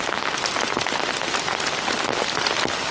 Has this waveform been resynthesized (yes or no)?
no